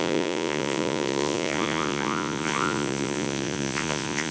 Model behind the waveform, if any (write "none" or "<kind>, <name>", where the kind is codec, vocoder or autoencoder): vocoder, Vocos